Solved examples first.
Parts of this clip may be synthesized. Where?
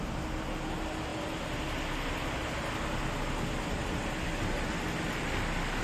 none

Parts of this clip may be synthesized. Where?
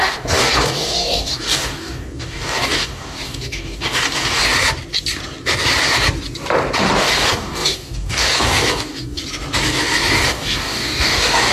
0.0-4.5 (codec, DAC); 7.0-9.2; 10.1-11.5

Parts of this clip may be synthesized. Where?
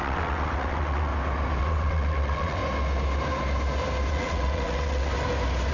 0.0-1.1 (vocoder, WaveNeXt); 1.6-2.6; 4.1-5.1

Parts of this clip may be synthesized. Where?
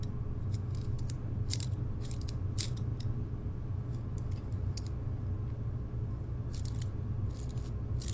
none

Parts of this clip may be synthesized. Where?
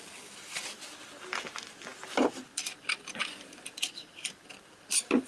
0.0-5.3 (vocoder, BigVGAN v2)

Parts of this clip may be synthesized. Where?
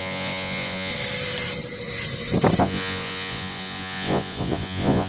0.0-0.9 (vocoder, Vocos); 2.6-5.1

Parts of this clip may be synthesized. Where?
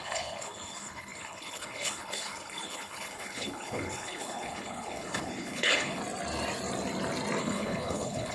0.0-6.0 (codec, HILCodec); 7.4-8.3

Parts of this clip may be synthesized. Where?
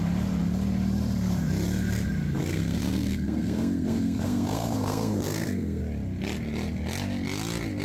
2.5-5.8 (codec, SNAC)